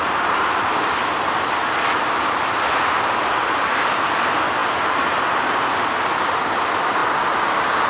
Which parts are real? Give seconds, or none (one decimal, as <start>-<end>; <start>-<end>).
0.0-7.9